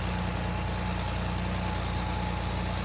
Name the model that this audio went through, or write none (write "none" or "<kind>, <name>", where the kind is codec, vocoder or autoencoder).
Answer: none